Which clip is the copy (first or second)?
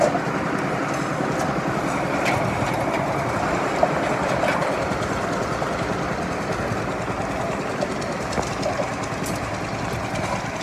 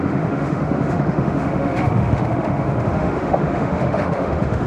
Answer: second